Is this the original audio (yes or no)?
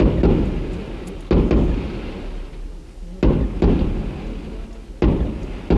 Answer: yes